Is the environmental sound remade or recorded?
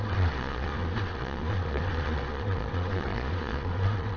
remade